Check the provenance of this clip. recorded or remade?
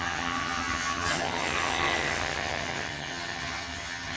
remade